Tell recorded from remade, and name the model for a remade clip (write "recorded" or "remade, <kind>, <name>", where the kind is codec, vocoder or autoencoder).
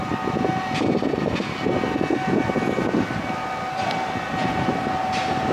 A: recorded